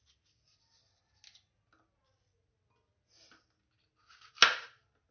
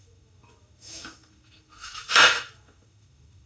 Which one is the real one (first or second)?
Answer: first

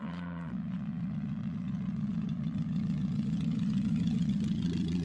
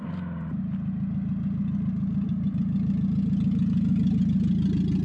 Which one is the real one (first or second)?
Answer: second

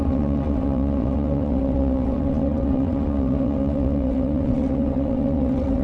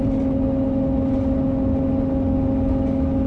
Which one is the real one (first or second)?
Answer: second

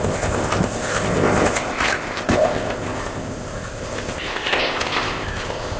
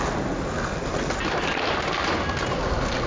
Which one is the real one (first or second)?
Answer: second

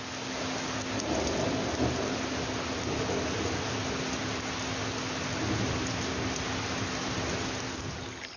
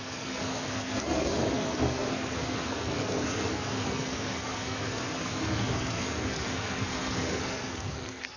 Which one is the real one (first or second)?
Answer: first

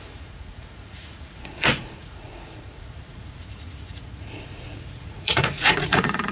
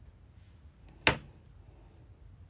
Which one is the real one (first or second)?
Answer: second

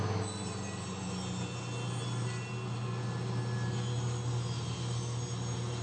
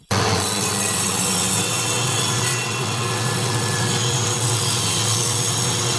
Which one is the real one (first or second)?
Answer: first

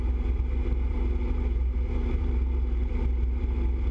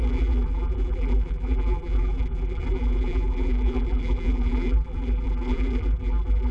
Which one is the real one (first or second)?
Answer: first